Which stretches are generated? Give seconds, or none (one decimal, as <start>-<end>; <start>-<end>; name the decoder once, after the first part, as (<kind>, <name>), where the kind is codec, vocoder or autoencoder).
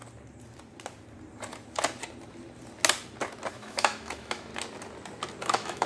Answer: 3.5-4.5 (autoencoder, DAC-VAE); 5.4-5.9